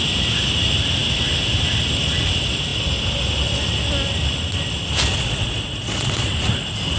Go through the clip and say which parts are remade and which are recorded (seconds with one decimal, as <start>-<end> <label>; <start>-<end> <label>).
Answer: 0.0-5.1 recorded; 5.1-6.3 remade; 6.3-7.0 recorded